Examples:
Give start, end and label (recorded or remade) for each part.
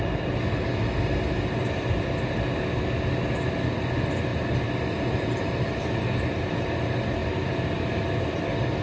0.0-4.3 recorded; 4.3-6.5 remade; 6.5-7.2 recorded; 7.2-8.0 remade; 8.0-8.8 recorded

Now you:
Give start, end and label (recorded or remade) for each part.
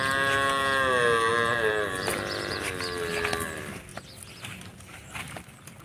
0.0-5.8 recorded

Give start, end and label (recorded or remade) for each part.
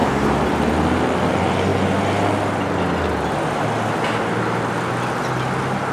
0.0-0.7 remade; 0.7-5.9 recorded